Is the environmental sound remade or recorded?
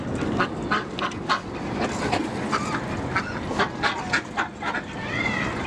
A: recorded